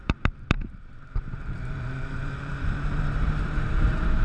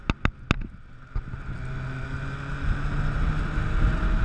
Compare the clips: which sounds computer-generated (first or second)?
first